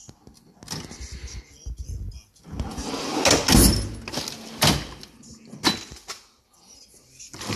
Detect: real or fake real